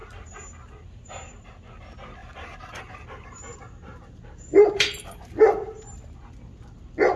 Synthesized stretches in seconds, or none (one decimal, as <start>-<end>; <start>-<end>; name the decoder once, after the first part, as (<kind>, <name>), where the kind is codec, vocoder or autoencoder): 2.2-2.8 (vocoder, BigVGAN v2)